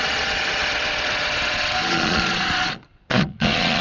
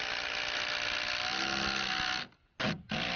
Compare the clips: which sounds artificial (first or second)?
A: first